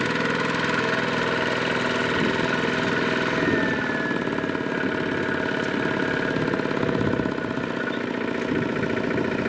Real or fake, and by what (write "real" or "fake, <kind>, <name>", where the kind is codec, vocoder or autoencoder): real